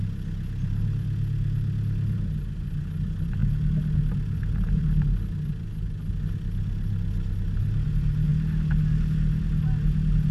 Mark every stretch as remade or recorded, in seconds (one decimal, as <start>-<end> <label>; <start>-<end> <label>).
0.0-10.3 recorded